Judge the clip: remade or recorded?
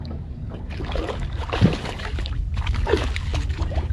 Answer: remade